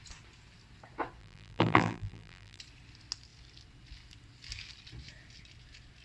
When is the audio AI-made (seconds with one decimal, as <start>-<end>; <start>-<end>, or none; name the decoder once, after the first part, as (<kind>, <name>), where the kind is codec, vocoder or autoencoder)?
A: 1.2-2.6 (vocoder, BigVGAN v2)